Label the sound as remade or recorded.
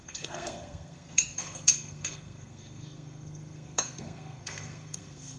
remade